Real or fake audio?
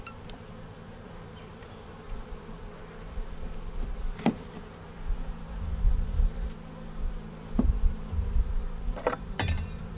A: fake